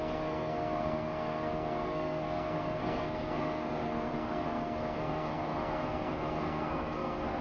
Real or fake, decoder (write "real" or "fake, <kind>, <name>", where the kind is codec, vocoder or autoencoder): fake, codec, SNAC